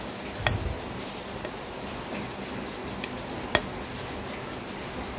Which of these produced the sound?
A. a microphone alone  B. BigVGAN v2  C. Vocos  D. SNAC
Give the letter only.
A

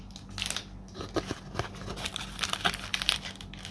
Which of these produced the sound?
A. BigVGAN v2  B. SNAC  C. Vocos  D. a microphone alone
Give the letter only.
D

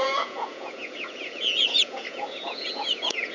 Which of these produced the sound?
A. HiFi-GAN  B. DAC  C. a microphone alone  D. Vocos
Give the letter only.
D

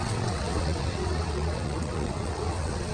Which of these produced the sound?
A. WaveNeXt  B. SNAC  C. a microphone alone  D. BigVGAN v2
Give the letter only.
A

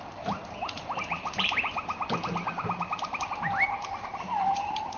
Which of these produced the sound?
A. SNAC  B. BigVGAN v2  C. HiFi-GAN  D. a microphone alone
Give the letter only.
B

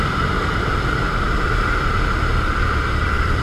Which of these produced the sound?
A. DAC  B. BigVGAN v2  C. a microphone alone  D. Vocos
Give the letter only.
B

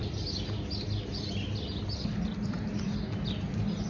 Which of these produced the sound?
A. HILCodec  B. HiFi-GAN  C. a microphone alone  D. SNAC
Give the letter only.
C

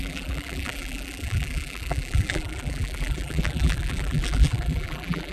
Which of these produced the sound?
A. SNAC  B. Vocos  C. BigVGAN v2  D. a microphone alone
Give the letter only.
C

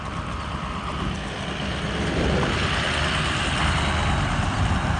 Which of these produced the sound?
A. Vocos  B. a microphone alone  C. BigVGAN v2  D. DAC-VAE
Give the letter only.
B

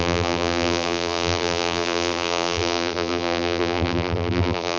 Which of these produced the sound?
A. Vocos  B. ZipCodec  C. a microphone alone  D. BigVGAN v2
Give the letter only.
D